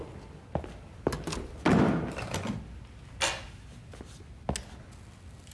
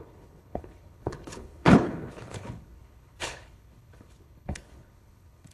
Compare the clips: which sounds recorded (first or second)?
first